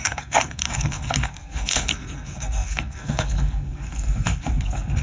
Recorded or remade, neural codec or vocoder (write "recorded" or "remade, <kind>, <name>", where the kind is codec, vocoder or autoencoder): remade, codec, SNAC